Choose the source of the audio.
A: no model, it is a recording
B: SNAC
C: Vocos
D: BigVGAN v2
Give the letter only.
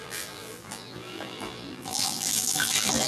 D